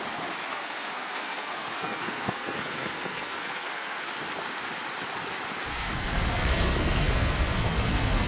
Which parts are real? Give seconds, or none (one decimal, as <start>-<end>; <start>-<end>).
0.0-0.5; 4.0-5.7